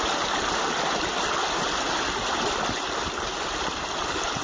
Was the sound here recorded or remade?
recorded